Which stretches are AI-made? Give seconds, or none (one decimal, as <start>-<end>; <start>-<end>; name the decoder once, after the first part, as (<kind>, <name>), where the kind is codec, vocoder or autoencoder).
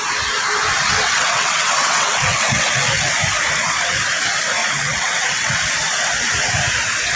0.7-3.1 (vocoder, WaveNeXt); 4.6-5.6